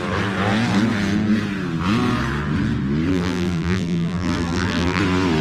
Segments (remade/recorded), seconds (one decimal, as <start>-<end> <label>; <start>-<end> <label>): 0.0-3.1 recorded; 3.1-5.0 remade; 5.0-5.4 recorded